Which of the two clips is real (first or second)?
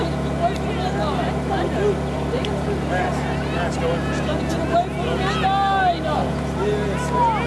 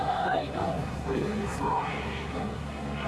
first